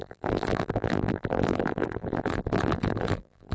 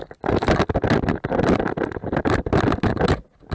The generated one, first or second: first